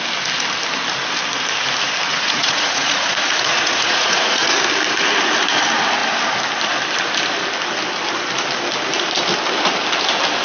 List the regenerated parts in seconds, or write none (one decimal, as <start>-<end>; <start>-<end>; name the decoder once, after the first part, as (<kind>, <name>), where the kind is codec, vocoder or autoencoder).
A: 2.1-4.6 (vocoder, Vocos)